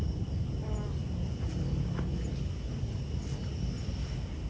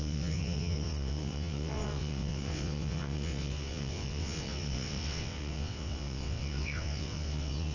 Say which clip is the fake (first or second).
second